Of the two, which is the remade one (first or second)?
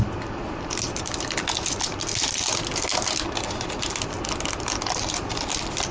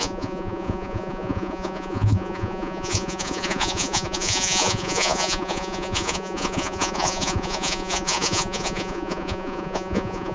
second